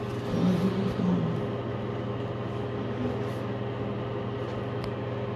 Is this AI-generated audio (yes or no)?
no